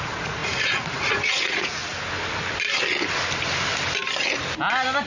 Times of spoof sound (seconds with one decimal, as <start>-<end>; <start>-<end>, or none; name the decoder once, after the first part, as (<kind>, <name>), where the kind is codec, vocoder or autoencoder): 0.0-1.8 (vocoder, Vocos)